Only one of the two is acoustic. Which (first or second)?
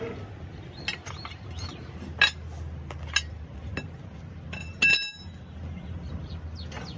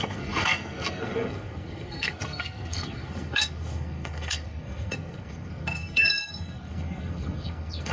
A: first